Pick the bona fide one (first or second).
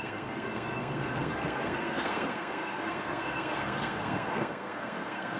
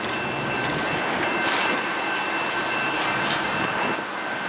second